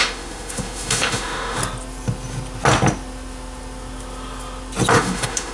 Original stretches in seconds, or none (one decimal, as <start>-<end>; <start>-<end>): 1.6-4.9